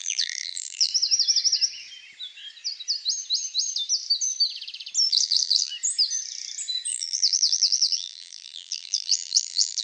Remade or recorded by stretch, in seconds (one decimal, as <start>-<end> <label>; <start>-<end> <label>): 0.0-0.9 remade; 0.9-5.1 recorded; 5.1-5.7 remade; 5.7-6.9 recorded; 6.9-9.8 remade